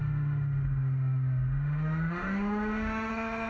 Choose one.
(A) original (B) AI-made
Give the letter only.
B